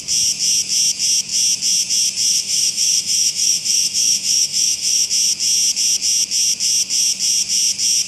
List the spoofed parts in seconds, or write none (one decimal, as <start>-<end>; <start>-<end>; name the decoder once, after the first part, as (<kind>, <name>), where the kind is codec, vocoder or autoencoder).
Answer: 2.3-5.1 (autoencoder, DAC-VAE)